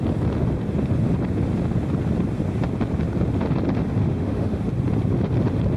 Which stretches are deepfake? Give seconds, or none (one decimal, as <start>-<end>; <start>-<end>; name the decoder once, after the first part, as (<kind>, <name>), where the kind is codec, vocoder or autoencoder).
4.0-4.6 (autoencoder, DAC-VAE)